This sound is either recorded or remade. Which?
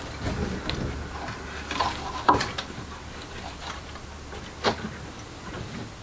remade